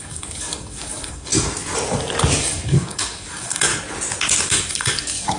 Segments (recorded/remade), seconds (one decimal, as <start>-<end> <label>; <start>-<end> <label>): 0.0-1.3 remade; 1.3-2.4 recorded; 2.4-3.7 remade; 3.7-4.4 recorded; 4.4-5.4 remade